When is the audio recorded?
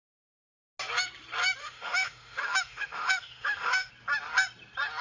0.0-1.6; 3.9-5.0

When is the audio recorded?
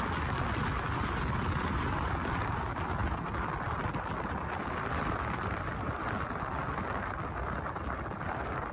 0.0-8.7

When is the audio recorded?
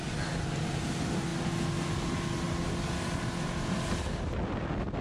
0.0-5.0